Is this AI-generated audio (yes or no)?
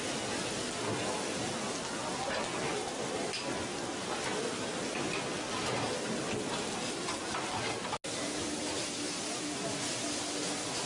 no